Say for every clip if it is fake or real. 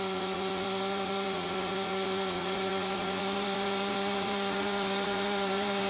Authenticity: fake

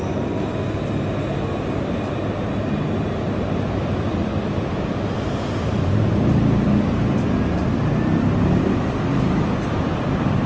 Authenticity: real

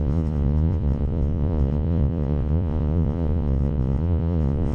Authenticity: fake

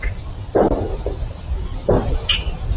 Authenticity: real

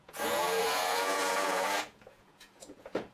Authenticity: fake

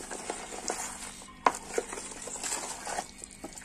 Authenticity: real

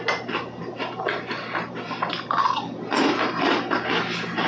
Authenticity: real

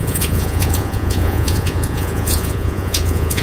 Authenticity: fake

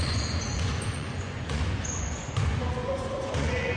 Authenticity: fake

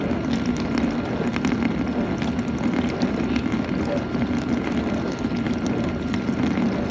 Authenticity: real